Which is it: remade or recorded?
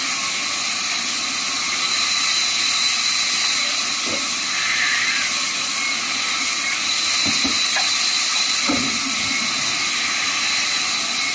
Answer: recorded